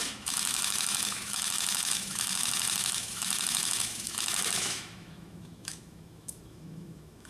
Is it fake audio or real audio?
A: fake